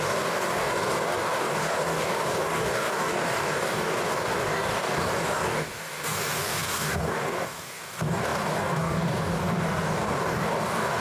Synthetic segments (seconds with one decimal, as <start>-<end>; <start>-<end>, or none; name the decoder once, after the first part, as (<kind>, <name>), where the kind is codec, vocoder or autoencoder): 0.0-11.0 (codec, DAC)